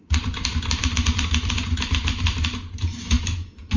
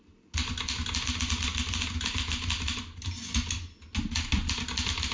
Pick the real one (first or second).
second